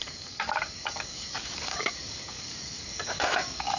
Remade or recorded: remade